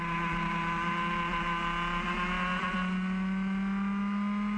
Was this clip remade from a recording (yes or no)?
no